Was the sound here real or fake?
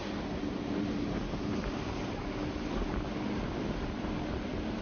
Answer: real